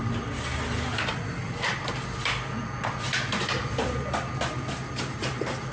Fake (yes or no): no